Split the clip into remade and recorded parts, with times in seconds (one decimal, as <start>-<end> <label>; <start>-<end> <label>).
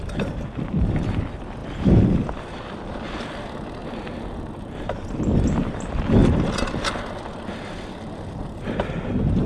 0.0-3.8 remade; 3.8-4.5 recorded; 4.5-6.2 remade; 6.2-7.4 recorded; 7.4-9.5 remade